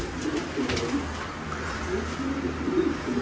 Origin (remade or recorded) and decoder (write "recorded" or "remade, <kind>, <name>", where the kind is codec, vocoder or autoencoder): recorded